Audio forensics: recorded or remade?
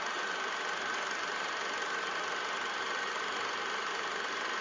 recorded